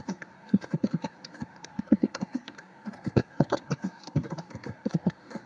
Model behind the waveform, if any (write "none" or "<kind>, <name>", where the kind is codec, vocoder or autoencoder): codec, SNAC